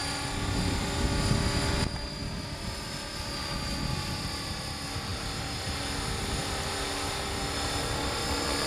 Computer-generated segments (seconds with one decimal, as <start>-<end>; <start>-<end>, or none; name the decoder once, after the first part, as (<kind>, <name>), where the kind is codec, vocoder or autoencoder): none